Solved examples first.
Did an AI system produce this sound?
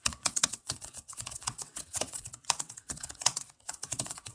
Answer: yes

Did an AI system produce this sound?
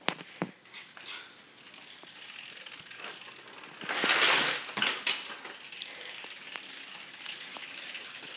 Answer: no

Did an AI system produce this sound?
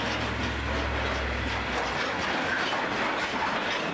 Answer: no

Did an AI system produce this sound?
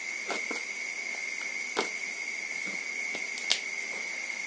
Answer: no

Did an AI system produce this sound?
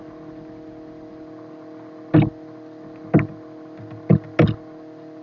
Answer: no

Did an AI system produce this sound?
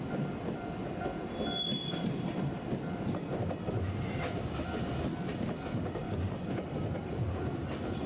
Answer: no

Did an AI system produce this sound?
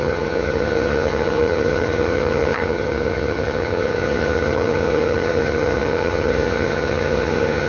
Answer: yes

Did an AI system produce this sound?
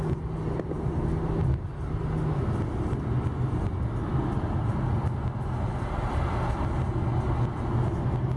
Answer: no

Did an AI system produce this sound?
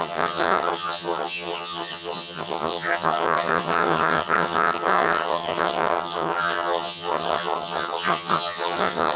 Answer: yes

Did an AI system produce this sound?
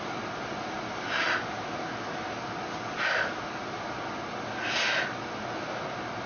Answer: no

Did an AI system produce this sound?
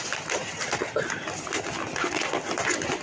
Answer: no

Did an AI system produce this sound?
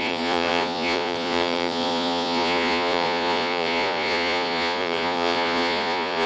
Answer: yes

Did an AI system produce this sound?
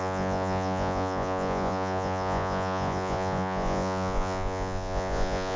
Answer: yes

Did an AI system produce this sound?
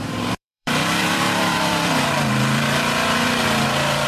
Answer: yes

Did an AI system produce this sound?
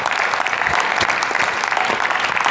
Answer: no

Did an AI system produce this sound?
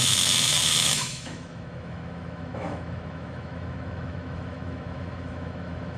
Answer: yes